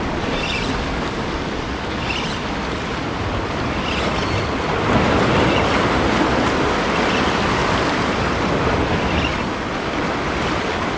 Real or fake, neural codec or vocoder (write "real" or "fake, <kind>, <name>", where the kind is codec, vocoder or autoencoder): real